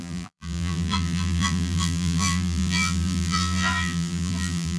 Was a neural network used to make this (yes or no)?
yes